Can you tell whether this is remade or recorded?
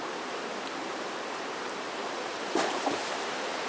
remade